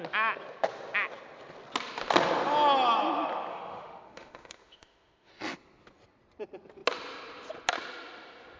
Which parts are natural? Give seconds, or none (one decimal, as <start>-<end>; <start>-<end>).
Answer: 0.0-3.5; 5.3-8.6